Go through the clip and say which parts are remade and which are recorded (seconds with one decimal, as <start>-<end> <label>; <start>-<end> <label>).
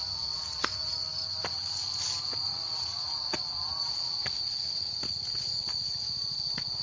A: 0.0-2.5 recorded; 2.5-4.7 remade; 4.7-6.8 recorded